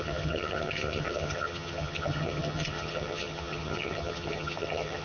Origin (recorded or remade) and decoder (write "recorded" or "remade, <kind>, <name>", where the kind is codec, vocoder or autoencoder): remade, vocoder, HiFi-GAN